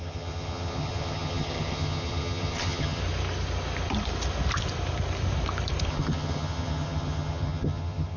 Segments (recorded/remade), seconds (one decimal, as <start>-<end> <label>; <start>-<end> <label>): 0.0-3.0 remade; 3.0-5.9 recorded; 5.9-8.2 remade